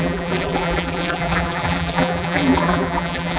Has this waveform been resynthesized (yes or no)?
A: yes